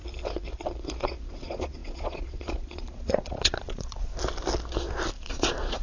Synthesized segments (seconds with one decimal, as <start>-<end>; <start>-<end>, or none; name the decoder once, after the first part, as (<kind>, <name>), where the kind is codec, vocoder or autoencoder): 1.0-4.1 (vocoder, Vocos); 5.1-5.8